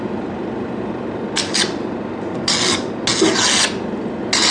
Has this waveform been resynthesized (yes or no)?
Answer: no